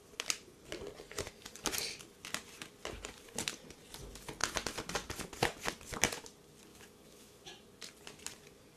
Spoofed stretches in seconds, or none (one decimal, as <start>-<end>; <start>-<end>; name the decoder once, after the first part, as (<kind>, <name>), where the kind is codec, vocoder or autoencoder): 6.7-7.5 (autoencoder, DAC-VAE)